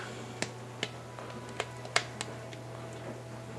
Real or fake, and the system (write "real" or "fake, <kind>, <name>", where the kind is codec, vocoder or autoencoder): real